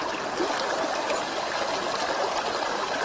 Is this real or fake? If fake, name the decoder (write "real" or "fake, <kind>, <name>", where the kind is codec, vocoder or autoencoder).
real